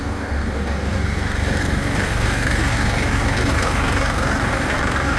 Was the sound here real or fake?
fake